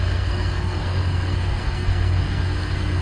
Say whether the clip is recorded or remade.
remade